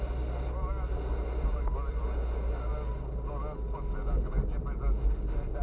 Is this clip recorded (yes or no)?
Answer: yes